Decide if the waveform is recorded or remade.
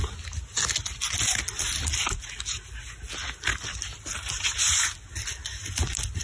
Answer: recorded